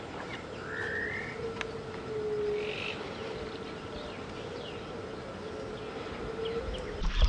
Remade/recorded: recorded